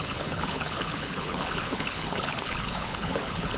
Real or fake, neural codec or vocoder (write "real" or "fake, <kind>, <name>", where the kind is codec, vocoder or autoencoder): fake, codec, HILCodec